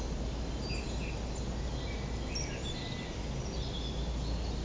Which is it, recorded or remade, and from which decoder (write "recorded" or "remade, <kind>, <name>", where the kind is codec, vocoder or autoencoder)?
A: recorded